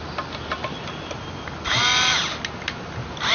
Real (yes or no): yes